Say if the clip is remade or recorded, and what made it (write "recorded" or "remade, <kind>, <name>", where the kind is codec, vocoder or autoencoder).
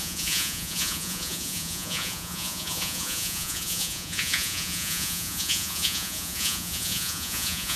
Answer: remade, vocoder, Vocos